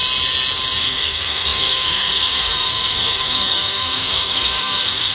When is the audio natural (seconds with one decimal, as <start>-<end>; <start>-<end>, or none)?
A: 0.0-0.8